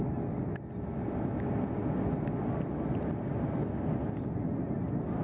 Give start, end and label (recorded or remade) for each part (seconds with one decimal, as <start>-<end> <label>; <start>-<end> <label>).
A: 0.0-5.2 recorded